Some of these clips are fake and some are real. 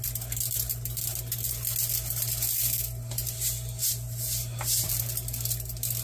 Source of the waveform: real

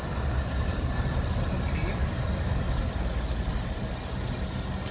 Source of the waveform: real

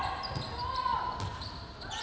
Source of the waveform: real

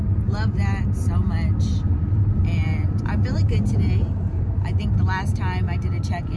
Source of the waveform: real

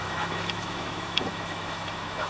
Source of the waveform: fake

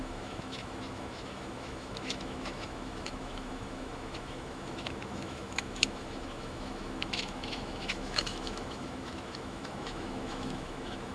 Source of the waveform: fake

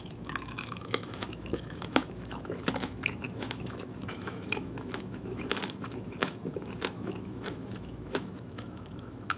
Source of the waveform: fake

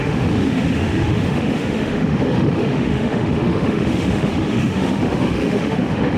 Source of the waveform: fake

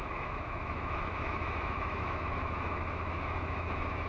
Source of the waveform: fake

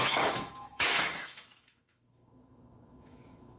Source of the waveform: fake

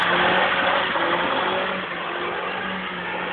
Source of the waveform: real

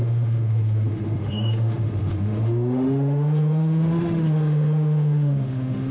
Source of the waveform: fake